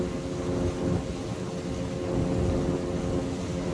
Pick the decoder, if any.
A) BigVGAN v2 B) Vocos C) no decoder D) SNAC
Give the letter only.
C